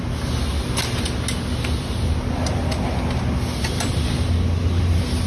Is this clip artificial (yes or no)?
no